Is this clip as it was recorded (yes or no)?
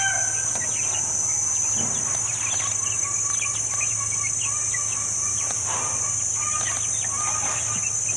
yes